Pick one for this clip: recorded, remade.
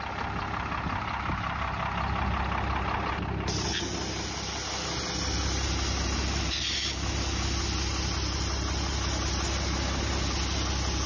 recorded